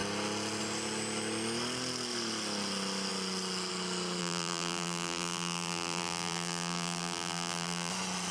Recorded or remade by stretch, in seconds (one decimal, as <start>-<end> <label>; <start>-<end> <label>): 0.0-4.2 recorded; 4.2-7.9 remade; 7.9-8.3 recorded